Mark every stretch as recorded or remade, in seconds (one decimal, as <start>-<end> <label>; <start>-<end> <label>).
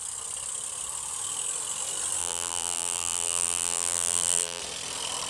0.0-2.2 recorded; 2.2-4.6 remade; 4.6-5.3 recorded